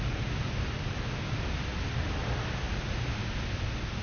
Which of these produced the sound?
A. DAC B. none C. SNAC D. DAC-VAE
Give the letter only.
B